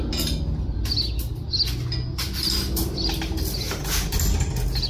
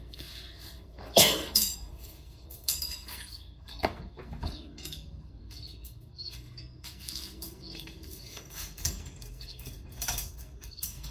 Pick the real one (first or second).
first